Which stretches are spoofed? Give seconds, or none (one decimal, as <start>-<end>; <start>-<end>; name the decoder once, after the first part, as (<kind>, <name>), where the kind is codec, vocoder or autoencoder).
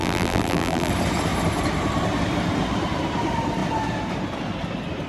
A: 0.0-0.9 (vocoder, BigVGAN v2)